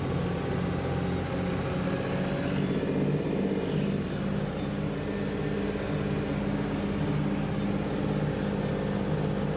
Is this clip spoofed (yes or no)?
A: no